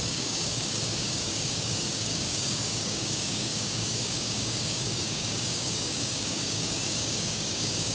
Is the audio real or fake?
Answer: fake